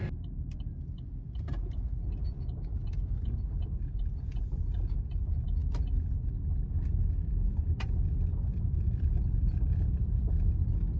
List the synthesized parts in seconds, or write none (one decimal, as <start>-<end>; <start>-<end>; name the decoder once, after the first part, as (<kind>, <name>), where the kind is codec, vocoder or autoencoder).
2.8-4.4 (vocoder, Vocos)